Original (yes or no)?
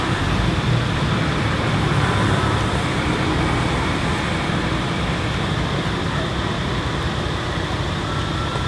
no